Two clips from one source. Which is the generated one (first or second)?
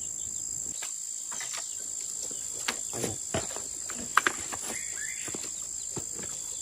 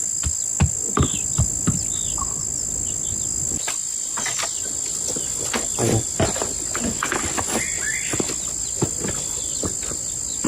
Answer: first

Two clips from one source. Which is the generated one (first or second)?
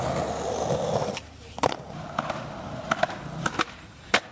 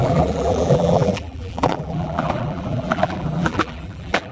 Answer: second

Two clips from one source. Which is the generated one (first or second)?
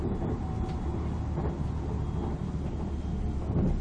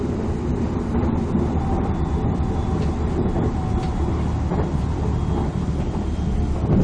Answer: second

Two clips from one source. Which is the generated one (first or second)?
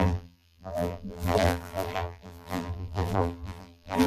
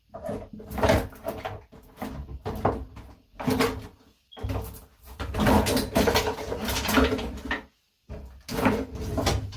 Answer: first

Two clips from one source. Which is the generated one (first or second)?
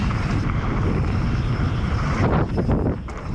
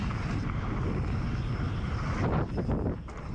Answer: first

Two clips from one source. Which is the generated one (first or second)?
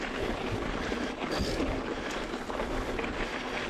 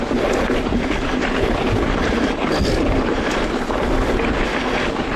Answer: second